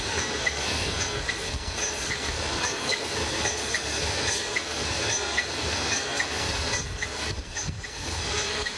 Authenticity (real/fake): fake